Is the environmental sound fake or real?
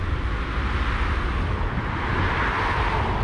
real